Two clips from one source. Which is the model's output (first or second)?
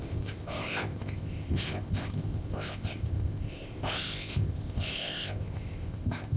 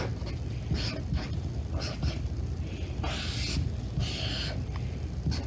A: first